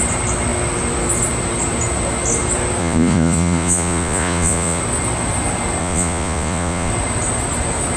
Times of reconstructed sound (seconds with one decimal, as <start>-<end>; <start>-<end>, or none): 2.8-4.8; 5.8-6.9